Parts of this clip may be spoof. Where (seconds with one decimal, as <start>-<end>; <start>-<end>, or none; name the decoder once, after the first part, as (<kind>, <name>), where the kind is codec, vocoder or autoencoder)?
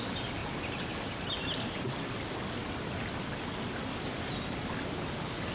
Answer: none